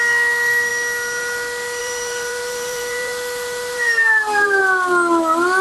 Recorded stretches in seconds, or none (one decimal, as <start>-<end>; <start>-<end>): 0.0-1.8; 4.6-5.6